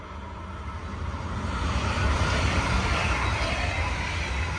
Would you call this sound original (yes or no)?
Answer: yes